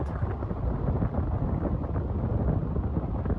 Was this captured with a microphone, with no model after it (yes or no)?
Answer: yes